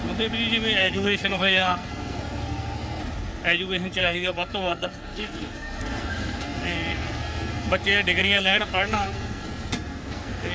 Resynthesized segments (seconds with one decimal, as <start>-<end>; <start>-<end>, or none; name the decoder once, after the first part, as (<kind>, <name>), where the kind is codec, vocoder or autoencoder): 0.8-3.0 (codec, SNAC); 4.0-7.7; 8.2-10.5